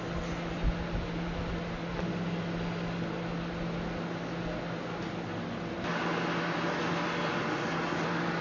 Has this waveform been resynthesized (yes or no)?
no